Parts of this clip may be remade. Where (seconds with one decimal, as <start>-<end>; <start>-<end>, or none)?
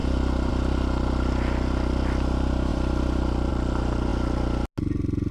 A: 2.7-3.5